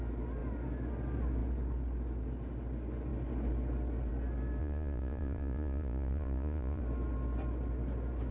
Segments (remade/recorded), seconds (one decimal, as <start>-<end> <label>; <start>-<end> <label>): 0.0-4.6 recorded; 4.6-6.8 remade; 6.8-8.3 recorded